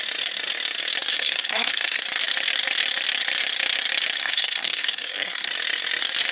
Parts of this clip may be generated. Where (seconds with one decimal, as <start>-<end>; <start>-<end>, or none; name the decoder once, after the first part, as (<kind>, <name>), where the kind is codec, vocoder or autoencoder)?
1.1-2.0 (codec, SNAC); 4.2-5.5